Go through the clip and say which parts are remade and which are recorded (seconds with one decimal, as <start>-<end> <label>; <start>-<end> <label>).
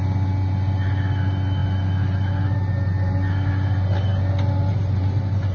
0.0-5.5 recorded